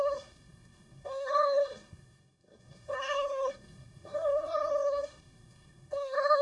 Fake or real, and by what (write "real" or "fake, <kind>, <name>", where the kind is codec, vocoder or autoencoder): fake, codec, SNAC